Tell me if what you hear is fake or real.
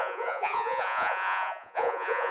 fake